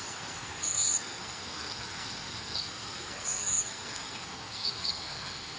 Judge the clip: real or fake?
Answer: fake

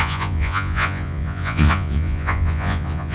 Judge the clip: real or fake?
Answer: fake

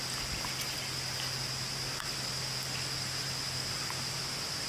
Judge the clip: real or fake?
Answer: real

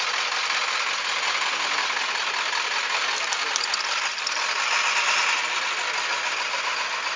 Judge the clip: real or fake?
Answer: real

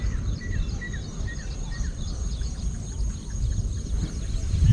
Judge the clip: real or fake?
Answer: real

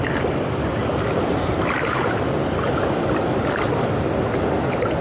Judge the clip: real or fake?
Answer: real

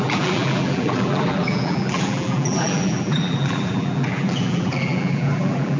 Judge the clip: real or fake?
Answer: fake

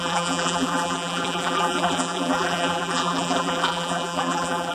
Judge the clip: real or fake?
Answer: fake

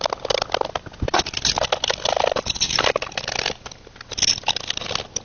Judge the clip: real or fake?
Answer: real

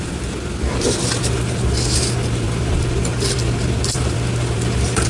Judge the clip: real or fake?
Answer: fake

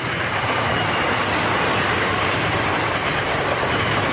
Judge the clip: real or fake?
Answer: real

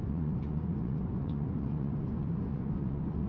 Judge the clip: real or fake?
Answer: fake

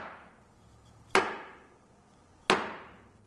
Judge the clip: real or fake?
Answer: real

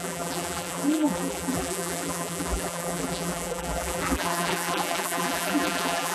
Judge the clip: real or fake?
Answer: fake